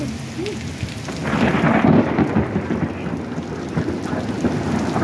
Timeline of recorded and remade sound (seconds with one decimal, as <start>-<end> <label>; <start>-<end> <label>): 0.0-5.0 recorded